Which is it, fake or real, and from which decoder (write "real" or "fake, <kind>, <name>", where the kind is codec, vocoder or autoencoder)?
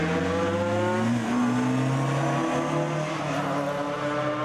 real